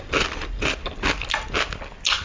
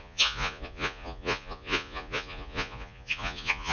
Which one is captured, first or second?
first